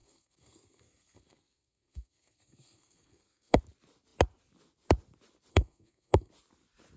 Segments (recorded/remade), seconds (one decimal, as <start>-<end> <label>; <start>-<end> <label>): 0.0-3.6 remade; 3.6-5.5 recorded; 5.5-6.3 remade; 6.3-7.0 recorded